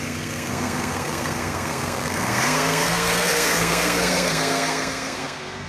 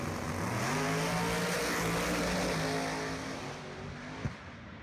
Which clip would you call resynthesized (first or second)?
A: first